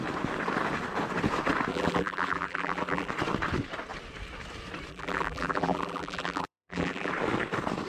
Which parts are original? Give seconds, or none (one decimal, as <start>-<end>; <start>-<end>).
0.0-1.7; 3.1-4.9; 7.1-7.9